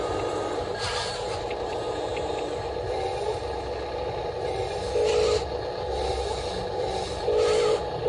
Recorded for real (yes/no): yes